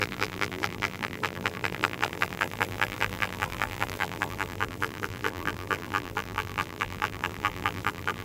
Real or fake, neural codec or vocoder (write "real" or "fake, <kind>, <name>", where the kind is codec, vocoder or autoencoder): fake, vocoder, BigVGAN v2